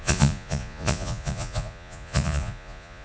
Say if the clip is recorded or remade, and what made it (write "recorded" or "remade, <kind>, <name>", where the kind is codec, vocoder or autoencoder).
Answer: remade, vocoder, Vocos